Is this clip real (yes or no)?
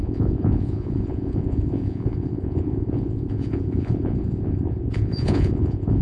no